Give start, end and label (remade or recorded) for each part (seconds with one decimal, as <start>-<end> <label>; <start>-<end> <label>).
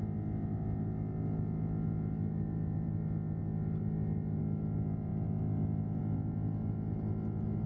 0.0-7.7 recorded